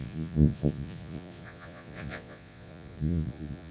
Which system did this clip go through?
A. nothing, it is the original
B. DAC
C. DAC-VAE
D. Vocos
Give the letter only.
D